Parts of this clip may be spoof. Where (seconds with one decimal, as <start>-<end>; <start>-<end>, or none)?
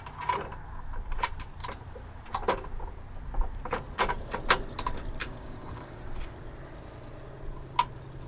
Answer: 5.2-6.0